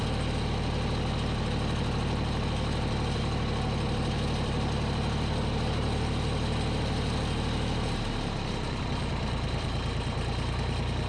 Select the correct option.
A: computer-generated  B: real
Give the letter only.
B